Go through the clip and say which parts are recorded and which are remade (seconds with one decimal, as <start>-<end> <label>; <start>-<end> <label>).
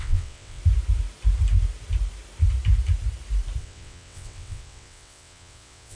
0.0-0.6 remade; 0.6-3.6 recorded; 3.6-5.9 remade